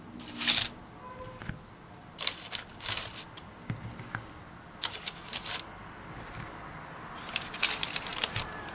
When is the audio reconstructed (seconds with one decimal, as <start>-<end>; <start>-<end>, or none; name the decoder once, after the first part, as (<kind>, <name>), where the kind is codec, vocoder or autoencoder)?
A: 8.1-8.7 (vocoder, BigVGAN v2)